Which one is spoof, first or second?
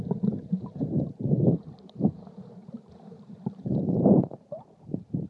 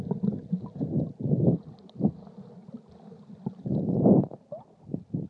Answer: first